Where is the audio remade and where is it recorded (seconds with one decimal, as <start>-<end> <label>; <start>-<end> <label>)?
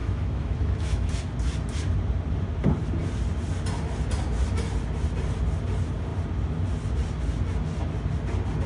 0.0-1.1 remade; 1.1-8.7 recorded